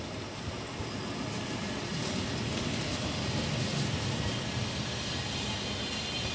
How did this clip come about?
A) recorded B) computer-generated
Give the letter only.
A